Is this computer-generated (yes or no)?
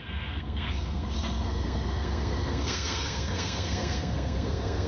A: yes